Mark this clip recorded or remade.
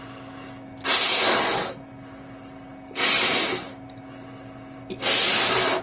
recorded